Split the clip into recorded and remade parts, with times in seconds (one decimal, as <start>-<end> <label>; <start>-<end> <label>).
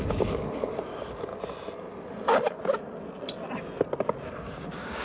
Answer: 0.0-1.3 remade; 1.3-4.3 recorded; 4.3-5.0 remade